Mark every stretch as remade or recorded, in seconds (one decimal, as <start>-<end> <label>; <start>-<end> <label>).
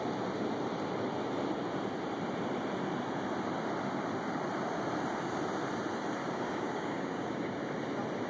0.0-6.2 recorded; 6.2-7.6 remade; 7.6-8.3 recorded